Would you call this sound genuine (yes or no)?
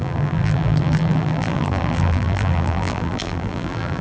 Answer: no